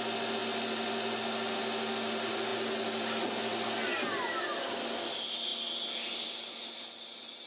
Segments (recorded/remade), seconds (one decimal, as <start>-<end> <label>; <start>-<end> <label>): 0.0-7.5 recorded